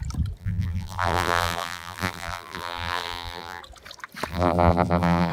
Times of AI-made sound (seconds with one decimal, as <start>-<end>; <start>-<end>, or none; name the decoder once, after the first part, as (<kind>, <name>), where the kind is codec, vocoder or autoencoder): 0.4-3.6 (vocoder, BigVGAN v2); 4.3-5.3